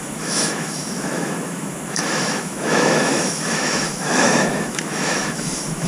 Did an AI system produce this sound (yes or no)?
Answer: yes